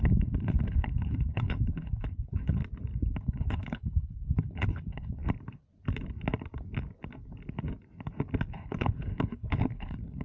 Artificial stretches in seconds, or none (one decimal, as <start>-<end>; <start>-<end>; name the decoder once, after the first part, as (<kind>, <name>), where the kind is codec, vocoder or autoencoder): 0.0-2.6 (codec, HILCodec); 3.2-5.2; 8.5-10.2